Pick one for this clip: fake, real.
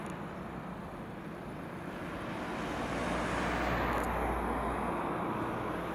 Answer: real